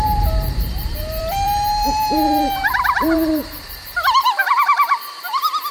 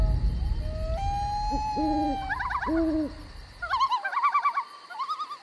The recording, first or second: second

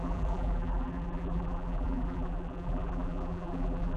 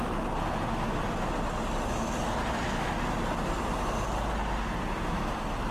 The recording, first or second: second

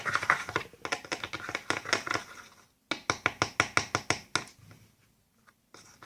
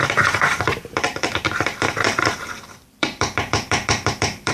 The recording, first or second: first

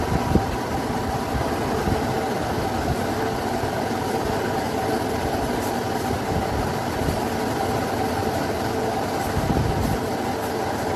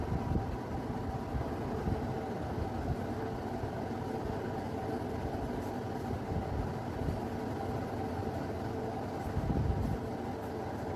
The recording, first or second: second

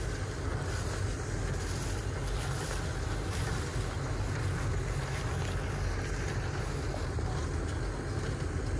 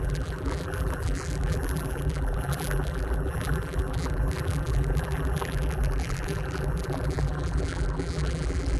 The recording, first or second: first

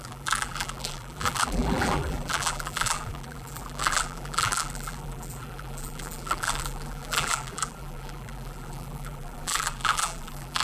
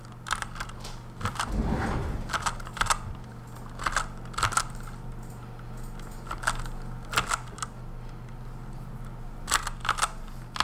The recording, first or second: second